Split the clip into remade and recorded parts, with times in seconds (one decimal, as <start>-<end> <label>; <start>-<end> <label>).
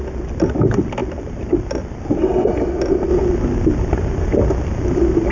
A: 0.0-5.3 recorded